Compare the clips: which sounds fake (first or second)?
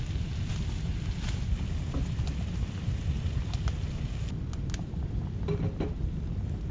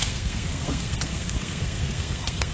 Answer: second